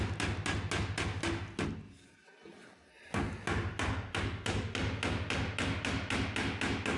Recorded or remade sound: recorded